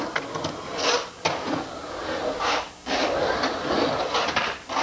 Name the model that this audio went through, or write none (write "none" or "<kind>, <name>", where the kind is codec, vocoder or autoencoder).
none